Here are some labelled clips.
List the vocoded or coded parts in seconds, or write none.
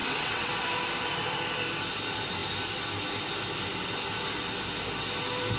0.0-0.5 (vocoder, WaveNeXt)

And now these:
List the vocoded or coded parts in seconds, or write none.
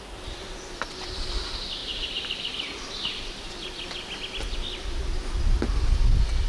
1.8-2.8 (vocoder, BigVGAN v2)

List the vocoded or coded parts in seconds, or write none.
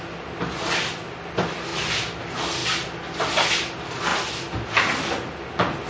none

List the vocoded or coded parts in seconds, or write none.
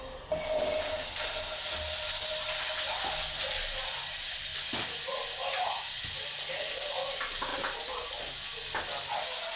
none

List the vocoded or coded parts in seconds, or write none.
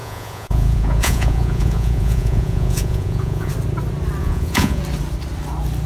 0.0-3.5 (vocoder, Vocos); 4.2-4.8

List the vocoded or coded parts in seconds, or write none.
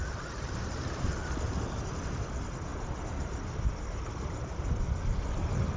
none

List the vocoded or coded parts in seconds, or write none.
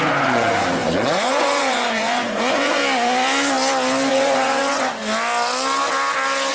0.0-2.8 (vocoder, Vocos); 4.1-5.0